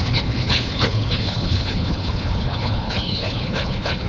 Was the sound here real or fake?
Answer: fake